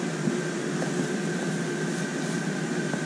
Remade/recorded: recorded